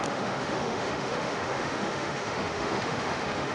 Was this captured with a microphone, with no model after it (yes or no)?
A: no